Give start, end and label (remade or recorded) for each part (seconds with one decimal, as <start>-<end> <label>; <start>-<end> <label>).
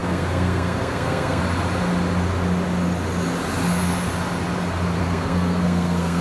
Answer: 0.0-1.4 remade; 1.4-5.0 recorded; 5.0-6.2 remade